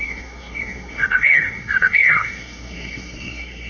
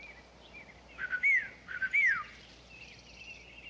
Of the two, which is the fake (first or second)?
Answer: first